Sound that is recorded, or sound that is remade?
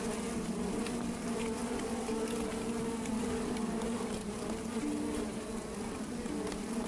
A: recorded